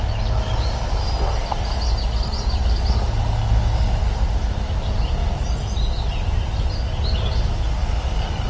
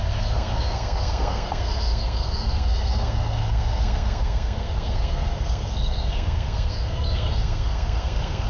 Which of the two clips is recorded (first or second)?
first